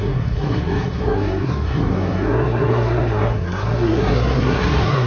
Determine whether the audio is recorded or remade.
remade